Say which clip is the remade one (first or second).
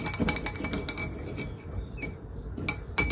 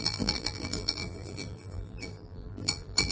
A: second